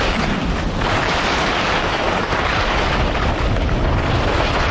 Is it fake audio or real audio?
real